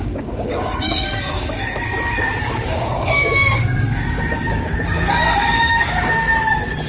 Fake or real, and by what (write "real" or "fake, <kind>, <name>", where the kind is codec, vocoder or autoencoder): fake, codec, DAC